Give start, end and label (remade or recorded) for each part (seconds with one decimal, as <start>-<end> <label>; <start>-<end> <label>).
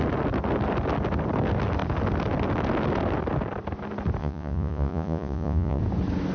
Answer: 0.0-4.2 recorded; 4.2-5.8 remade; 5.8-6.3 recorded